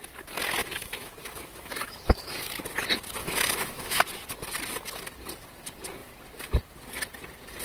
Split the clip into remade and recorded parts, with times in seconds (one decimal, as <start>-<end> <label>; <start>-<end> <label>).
0.0-0.6 recorded; 0.6-2.5 remade; 2.5-3.2 recorded; 3.2-4.0 remade; 4.0-7.6 recorded